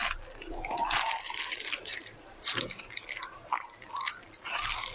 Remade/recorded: recorded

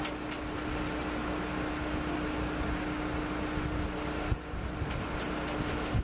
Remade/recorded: recorded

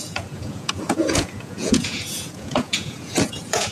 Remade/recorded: remade